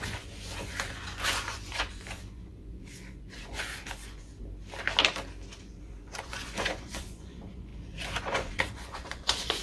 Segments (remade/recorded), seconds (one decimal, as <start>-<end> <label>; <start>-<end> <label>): 0.0-4.3 remade; 4.3-5.6 recorded; 5.6-9.6 remade